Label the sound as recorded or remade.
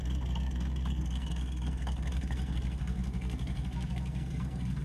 remade